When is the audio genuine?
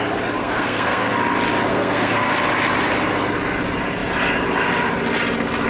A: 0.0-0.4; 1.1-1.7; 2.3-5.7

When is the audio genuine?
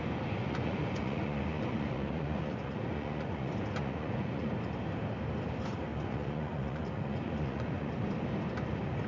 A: 0.0-0.4; 4.5-5.9; 7.9-9.1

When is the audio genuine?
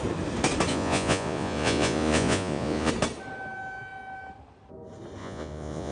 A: 0.0-0.7; 2.9-5.2